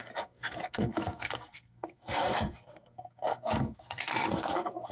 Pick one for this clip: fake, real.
fake